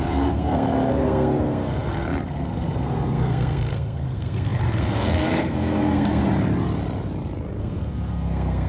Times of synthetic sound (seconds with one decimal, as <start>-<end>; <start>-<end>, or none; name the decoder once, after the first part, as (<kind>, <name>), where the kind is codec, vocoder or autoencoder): 0.0-6.2 (codec, SNAC); 7.6-8.7